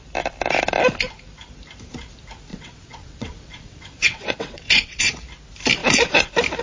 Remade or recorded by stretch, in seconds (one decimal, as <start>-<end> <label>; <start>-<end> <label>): 0.0-2.5 recorded; 2.5-5.1 remade; 5.1-6.6 recorded